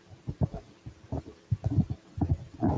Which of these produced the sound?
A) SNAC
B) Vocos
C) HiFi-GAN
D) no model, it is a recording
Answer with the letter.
D